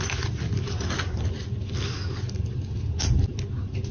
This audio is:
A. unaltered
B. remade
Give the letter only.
A